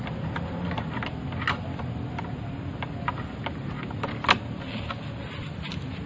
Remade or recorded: recorded